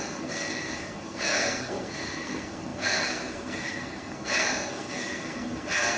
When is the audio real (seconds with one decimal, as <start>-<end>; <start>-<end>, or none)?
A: none